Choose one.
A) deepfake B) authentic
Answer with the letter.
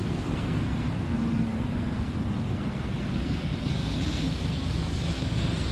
A